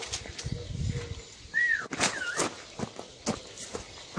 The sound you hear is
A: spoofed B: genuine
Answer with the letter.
B